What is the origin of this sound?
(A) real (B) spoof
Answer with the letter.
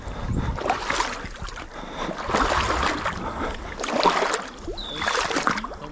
A